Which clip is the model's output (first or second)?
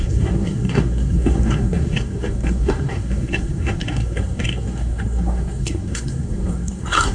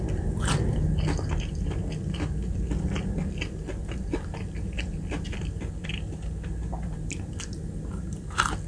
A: first